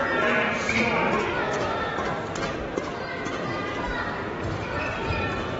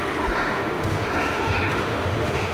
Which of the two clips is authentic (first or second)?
first